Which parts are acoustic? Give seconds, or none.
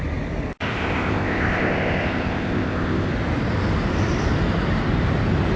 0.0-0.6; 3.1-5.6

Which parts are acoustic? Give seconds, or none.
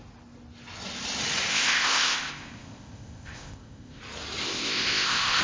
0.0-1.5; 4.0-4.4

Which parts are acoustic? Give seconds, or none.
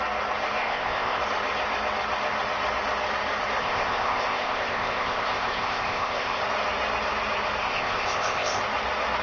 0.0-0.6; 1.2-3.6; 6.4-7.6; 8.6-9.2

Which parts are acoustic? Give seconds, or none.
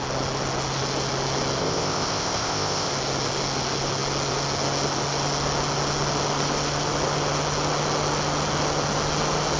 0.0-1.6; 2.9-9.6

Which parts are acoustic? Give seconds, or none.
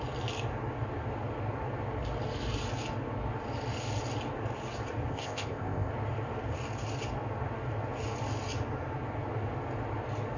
0.0-5.1; 5.9-10.4